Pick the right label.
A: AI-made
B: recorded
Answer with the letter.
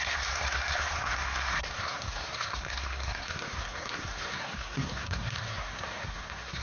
A